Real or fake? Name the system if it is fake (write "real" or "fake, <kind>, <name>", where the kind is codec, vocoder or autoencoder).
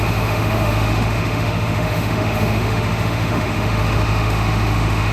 fake, autoencoder, DAC-VAE